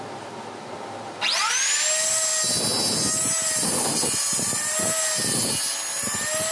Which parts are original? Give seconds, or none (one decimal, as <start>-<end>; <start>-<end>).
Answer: 0.0-6.5